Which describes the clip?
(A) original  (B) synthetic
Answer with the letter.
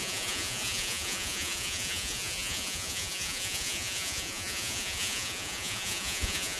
B